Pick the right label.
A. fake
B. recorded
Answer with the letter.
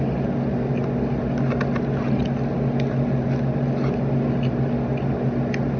B